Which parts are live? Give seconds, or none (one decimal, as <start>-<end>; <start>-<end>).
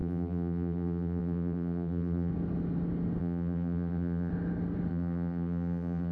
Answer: 2.3-3.2; 4.3-4.9